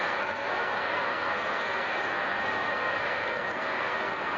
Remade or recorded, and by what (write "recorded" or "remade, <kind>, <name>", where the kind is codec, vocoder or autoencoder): remade, codec, SNAC